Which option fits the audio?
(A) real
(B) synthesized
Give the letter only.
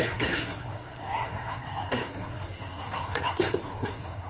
B